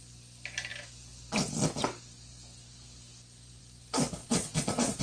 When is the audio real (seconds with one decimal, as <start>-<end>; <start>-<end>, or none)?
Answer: 0.0-4.2